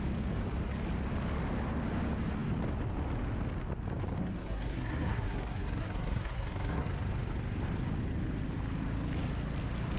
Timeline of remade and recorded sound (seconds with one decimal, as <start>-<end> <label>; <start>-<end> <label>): 0.0-4.2 recorded; 4.2-6.9 remade; 6.9-10.0 recorded